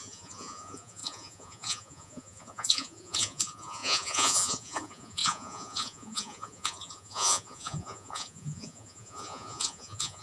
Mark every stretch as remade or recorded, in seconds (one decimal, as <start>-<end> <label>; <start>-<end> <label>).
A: 0.0-10.2 remade

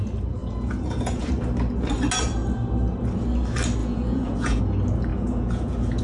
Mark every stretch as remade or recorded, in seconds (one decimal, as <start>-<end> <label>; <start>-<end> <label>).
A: 0.0-0.4 recorded; 0.4-1.3 remade; 1.3-3.8 recorded; 3.8-4.6 remade; 4.6-5.1 recorded; 5.1-6.0 remade

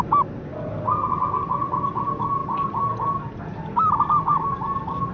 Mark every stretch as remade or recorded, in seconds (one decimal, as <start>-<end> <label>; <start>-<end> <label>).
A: 0.0-5.1 recorded